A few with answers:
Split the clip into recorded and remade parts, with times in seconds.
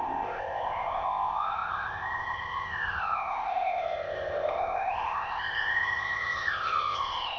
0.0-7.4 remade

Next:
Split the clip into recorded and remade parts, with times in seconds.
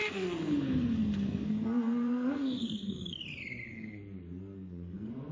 0.0-3.2 remade; 3.2-3.7 recorded; 3.7-5.3 remade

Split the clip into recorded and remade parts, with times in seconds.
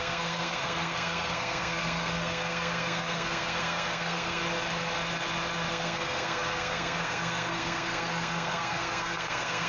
0.0-4.4 remade; 4.4-5.7 recorded; 5.7-9.7 remade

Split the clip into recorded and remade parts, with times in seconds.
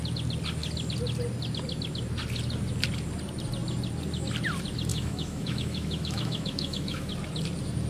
0.0-4.9 recorded; 4.9-7.1 remade; 7.1-7.9 recorded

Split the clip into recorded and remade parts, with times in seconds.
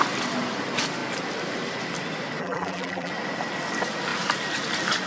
0.0-2.4 recorded; 2.4-3.1 remade; 3.1-5.1 recorded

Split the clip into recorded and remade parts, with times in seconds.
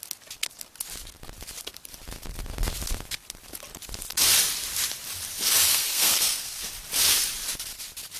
0.0-5.7 recorded; 5.7-6.7 remade; 6.7-8.2 recorded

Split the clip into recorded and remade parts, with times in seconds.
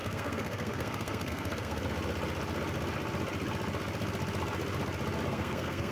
0.0-1.8 remade; 1.8-5.3 recorded; 5.3-5.9 remade